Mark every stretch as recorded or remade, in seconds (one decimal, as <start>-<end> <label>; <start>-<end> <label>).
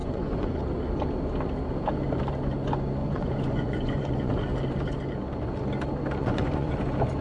0.0-0.6 remade; 0.6-3.0 recorded; 3.0-4.3 remade; 4.3-6.2 recorded; 6.2-6.7 remade; 6.7-7.2 recorded